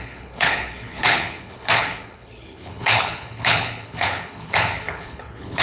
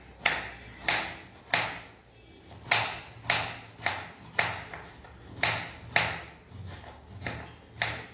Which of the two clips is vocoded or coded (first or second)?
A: first